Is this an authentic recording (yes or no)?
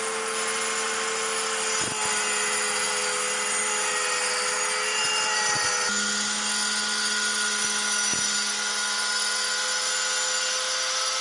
yes